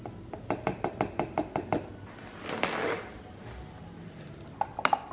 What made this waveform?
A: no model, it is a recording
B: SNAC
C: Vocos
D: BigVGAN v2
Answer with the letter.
A